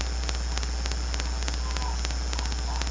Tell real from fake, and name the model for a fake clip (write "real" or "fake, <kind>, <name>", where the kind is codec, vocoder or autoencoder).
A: real